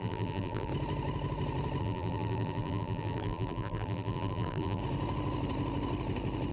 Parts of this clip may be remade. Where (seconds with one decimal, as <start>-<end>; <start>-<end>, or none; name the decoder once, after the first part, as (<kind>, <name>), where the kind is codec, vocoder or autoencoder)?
0.0-0.7 (vocoder, BigVGAN v2); 1.8-4.8